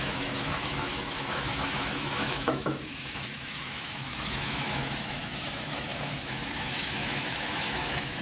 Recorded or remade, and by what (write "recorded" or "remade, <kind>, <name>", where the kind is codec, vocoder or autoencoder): remade, autoencoder, DAC-VAE